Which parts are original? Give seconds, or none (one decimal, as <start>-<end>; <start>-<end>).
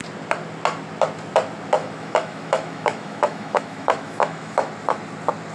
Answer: 0.0-1.8; 4.7-5.5